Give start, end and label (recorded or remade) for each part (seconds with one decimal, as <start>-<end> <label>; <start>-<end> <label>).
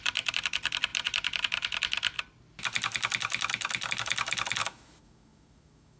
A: 0.0-4.6 recorded; 4.6-6.0 remade